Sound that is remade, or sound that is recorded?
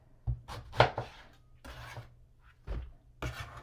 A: recorded